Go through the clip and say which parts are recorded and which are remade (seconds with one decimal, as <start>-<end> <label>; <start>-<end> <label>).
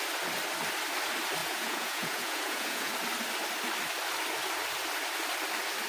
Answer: 0.0-1.4 recorded; 1.4-2.9 remade; 2.9-5.9 recorded